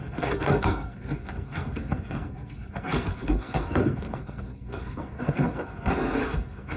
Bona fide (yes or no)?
no